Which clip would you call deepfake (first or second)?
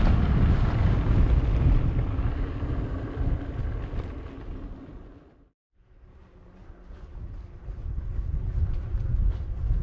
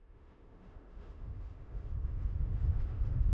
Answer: second